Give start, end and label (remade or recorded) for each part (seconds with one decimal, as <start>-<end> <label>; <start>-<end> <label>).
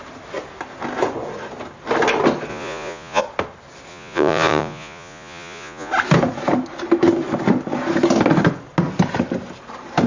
0.0-2.5 recorded; 2.5-3.2 remade; 3.2-3.9 recorded; 3.9-5.9 remade; 5.9-10.1 recorded